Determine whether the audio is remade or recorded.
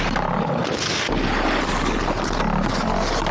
recorded